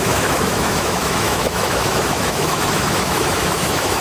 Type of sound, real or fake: fake